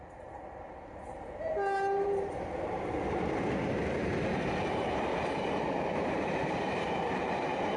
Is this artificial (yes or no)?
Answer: yes